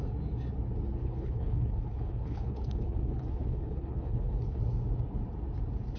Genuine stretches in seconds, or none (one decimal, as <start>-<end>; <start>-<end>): 0.0-1.0; 4.6-6.0